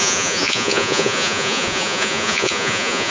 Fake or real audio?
fake